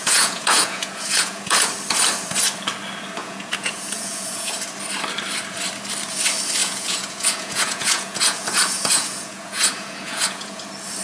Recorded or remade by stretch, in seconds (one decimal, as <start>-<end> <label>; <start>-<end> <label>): 0.0-1.7 remade; 1.7-3.2 recorded; 3.2-4.5 remade; 4.5-6.6 recorded; 6.6-10.6 remade; 10.6-11.0 recorded